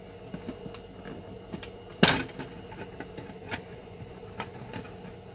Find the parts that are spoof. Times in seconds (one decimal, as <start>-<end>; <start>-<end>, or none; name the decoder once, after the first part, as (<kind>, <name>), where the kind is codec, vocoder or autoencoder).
3.4-4.2 (vocoder, Vocos)